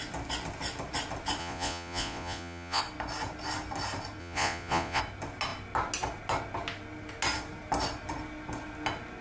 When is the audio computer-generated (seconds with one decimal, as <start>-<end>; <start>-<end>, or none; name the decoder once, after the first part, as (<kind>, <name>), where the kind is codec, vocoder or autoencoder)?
1.4-2.8 (vocoder, Vocos); 4.2-5.0